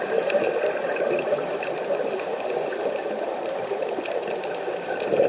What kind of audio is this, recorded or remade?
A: remade